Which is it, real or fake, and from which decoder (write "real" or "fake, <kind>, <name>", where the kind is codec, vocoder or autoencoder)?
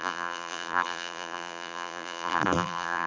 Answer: fake, vocoder, BigVGAN v2